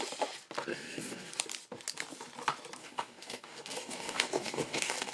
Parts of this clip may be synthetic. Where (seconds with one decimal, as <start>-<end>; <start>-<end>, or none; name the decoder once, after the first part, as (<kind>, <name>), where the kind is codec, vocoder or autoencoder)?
0.7-1.3 (codec, DAC); 2.8-5.1